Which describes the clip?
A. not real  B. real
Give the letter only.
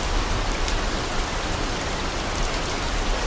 B